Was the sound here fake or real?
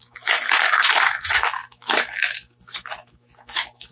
fake